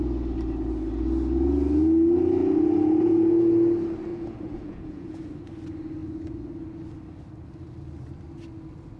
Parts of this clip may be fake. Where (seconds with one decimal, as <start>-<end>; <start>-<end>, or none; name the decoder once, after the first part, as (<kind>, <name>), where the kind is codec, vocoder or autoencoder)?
2.4-3.5 (vocoder, Vocos); 4.1-5.2